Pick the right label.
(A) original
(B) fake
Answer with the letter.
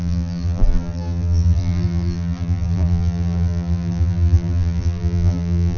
B